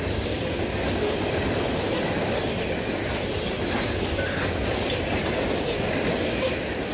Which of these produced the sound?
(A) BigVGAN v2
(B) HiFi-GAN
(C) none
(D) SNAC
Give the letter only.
C